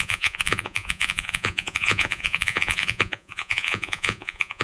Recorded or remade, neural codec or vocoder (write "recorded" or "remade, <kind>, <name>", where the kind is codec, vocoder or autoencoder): remade, vocoder, Vocos